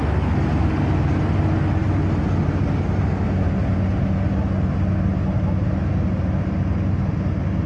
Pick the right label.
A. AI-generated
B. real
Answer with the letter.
B